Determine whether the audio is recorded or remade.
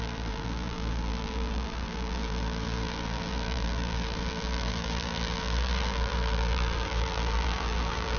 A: remade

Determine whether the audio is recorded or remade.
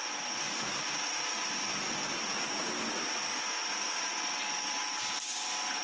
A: recorded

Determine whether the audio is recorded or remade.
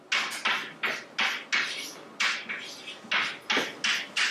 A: recorded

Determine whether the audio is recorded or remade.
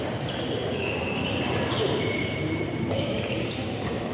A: remade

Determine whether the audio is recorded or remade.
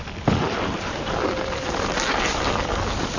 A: remade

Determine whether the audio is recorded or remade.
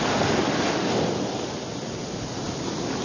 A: recorded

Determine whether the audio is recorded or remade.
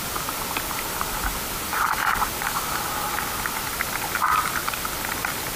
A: recorded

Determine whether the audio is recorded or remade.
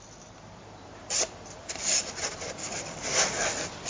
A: remade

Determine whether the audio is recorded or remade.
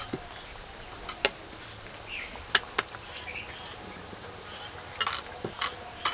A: recorded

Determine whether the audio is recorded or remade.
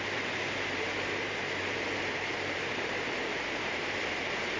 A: remade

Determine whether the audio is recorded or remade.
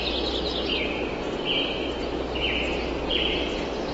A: recorded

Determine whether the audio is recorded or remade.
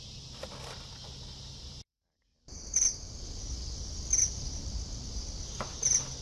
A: recorded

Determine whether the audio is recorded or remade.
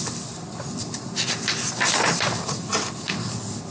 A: recorded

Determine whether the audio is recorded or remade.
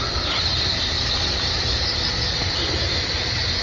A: remade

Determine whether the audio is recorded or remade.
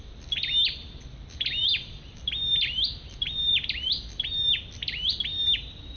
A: remade